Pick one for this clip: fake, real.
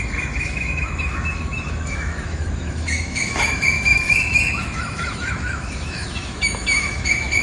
fake